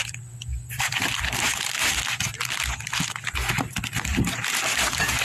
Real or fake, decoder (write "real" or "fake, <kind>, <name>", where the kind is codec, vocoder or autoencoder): real